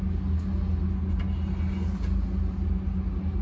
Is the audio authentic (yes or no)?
yes